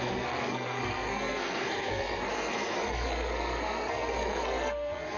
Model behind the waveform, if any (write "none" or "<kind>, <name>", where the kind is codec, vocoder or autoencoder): codec, SNAC